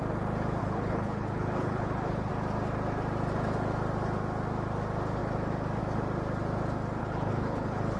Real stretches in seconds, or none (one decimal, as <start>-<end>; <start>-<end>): 0.0-0.6; 2.3-7.0